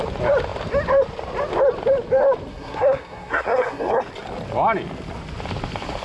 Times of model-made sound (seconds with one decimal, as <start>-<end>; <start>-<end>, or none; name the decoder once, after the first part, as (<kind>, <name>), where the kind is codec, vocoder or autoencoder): 2.5-4.0 (codec, SNAC)